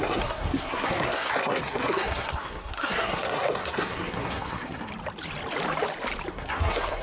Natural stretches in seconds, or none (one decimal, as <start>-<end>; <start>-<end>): 4.9-6.3